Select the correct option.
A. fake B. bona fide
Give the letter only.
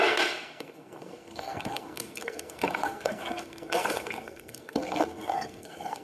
A